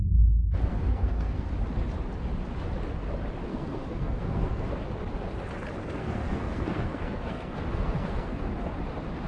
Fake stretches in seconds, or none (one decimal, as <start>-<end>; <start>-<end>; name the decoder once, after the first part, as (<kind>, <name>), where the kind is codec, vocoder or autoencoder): 0.7-1.5 (codec, SNAC); 3.5-4.7; 5.8-8.5